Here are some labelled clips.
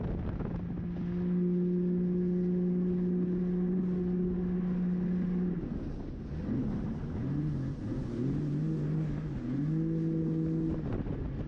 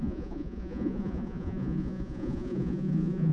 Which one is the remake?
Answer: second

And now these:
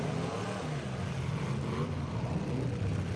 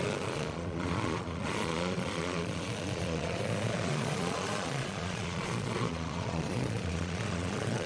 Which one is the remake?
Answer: second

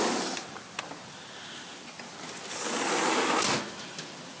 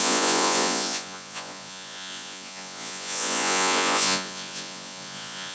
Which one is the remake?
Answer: second